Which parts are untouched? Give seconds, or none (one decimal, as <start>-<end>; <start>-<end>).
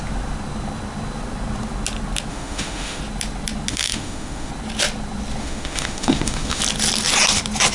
0.0-2.3; 3.0-3.7; 4.5-5.4; 6.6-7.7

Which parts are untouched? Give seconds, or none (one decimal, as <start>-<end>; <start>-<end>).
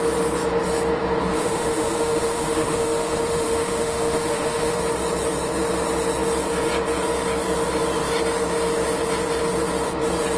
0.0-1.3; 4.8-10.4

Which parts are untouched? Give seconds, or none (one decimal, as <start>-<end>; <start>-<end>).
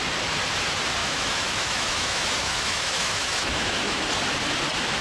0.0-1.0; 4.0-5.0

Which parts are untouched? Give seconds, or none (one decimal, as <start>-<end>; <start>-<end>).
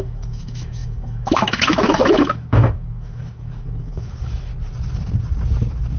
4.5-6.0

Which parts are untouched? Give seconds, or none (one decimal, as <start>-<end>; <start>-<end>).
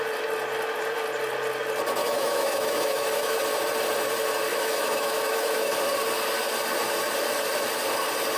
0.0-2.0; 3.4-4.5; 5.7-8.4